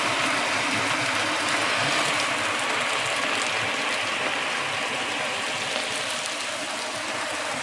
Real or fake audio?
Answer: real